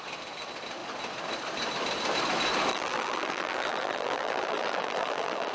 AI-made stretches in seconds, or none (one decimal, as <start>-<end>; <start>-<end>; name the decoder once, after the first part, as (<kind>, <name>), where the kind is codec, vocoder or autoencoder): 2.7-5.5 (vocoder, BigVGAN v2)